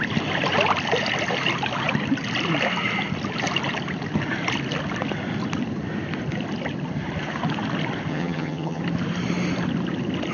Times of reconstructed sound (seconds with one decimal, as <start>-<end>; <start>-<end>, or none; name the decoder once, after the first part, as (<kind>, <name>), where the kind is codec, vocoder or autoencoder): 8.1-8.8 (vocoder, HiFi-GAN)